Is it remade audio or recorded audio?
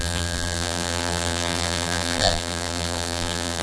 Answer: remade